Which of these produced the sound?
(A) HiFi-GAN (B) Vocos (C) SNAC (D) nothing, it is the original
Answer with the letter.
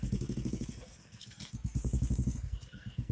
C